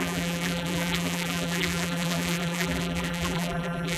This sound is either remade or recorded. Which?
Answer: remade